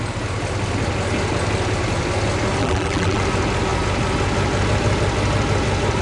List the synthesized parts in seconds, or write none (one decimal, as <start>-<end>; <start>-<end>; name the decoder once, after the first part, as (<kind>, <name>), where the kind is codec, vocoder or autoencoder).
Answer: 2.6-3.2 (vocoder, BigVGAN v2)